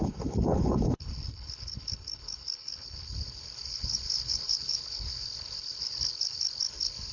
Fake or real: fake